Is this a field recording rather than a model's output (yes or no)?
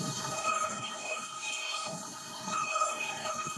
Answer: no